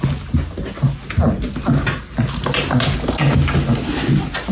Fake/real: real